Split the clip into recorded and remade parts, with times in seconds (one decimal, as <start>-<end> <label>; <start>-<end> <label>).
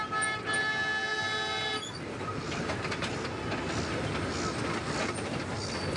0.0-6.0 recorded